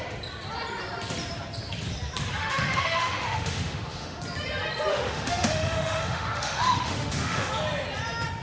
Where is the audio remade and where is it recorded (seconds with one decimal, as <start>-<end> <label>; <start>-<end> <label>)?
0.0-2.4 recorded; 2.4-4.2 remade; 4.2-4.9 recorded; 4.9-7.5 remade; 7.5-8.4 recorded